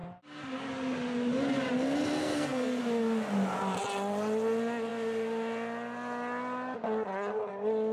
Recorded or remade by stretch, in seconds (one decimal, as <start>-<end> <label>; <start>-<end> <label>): 0.0-2.2 recorded; 2.2-2.8 remade; 2.8-7.9 recorded